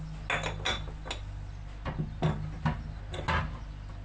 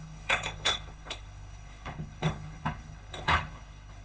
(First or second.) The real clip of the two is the first